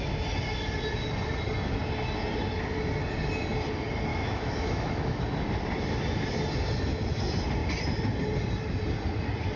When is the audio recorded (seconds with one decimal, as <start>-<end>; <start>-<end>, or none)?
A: 0.0-4.1; 5.2-9.6

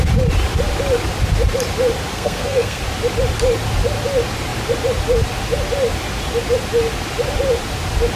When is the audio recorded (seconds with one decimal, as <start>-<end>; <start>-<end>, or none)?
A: 0.0-2.1; 2.8-8.2